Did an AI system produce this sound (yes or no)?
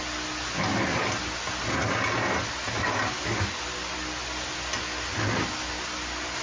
no